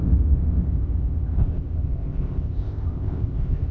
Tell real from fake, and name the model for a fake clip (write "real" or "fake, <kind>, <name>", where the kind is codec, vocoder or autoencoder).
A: fake, codec, ZipCodec